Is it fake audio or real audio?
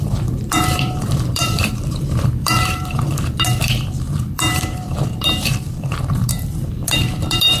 fake